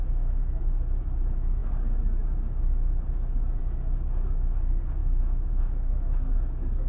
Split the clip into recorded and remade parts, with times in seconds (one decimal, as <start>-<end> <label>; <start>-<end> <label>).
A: 0.0-5.0 recorded; 5.0-6.9 remade